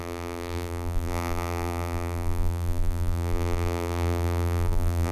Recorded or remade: remade